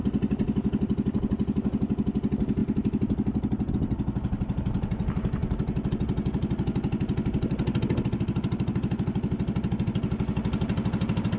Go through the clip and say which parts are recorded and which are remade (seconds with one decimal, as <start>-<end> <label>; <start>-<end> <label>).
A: 0.0-11.4 recorded